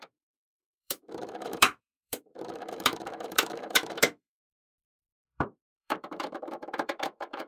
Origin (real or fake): fake